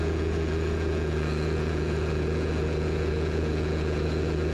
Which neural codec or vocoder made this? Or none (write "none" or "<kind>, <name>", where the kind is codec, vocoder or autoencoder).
vocoder, Vocos